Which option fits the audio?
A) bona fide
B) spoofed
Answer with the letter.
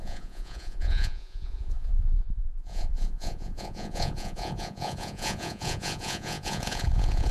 B